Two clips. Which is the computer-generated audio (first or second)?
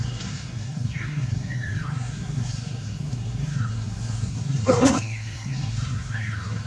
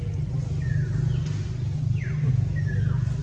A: first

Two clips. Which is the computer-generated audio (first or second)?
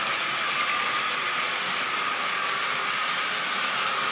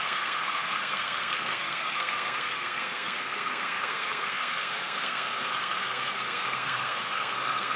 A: second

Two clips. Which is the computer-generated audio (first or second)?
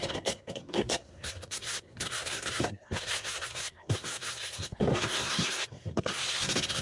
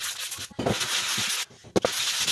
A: first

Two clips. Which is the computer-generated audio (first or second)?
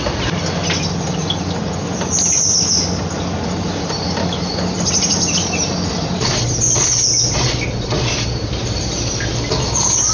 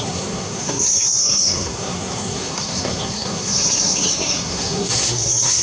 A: second